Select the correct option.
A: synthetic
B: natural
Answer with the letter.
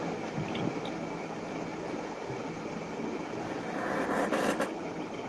B